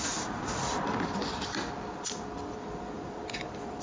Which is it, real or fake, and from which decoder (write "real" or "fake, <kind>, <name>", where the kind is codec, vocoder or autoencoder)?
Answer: fake, vocoder, BigVGAN v2